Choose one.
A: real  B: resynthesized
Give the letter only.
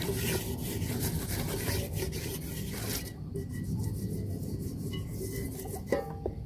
A